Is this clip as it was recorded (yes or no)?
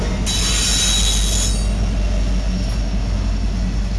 yes